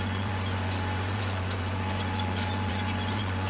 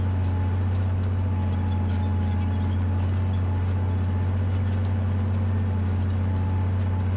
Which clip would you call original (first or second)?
second